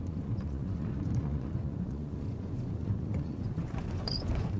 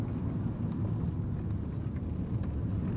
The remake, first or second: first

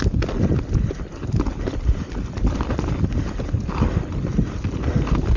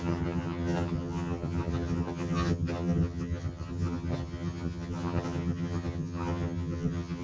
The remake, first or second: second